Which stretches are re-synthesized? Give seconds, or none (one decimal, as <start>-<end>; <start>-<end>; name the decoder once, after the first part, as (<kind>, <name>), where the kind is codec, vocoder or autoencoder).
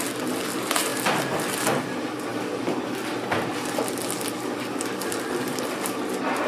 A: none